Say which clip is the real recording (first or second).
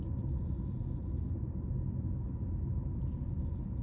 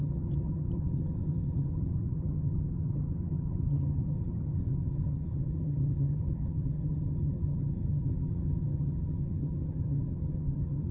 first